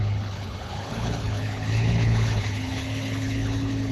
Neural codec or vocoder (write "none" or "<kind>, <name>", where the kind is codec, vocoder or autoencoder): codec, HILCodec